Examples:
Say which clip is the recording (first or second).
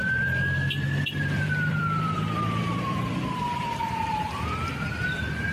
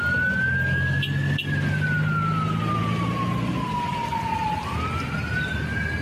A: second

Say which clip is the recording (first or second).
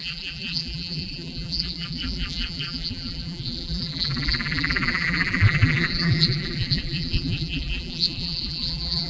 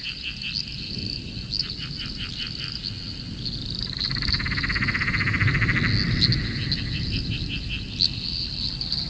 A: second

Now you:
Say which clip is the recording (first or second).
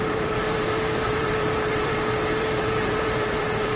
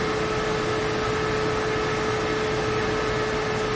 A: second